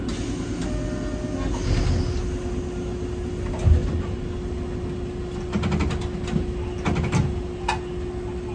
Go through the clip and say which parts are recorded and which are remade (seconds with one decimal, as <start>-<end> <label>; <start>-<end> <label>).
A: 0.0-8.5 recorded